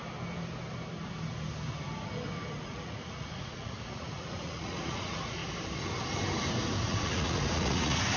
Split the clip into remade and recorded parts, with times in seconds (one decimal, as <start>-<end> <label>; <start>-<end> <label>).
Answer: 0.0-2.6 recorded; 2.6-5.4 remade; 5.4-6.8 recorded; 6.8-8.2 remade